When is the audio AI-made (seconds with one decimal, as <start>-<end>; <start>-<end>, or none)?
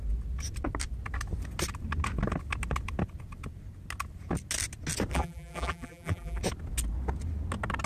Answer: 5.1-6.4